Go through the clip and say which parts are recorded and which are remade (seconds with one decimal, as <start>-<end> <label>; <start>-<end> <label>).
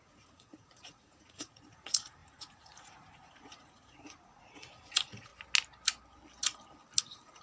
0.0-5.3 remade; 5.3-7.0 recorded; 7.0-7.4 remade